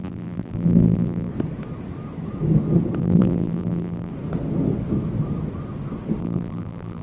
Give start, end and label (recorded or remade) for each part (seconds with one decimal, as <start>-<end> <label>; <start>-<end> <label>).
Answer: 0.0-1.3 remade; 1.3-3.0 recorded; 3.0-4.1 remade; 4.1-6.2 recorded; 6.2-7.0 remade